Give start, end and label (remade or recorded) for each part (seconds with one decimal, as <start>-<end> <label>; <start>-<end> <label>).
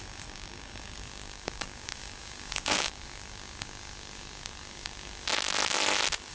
0.0-5.3 remade; 5.3-6.3 recorded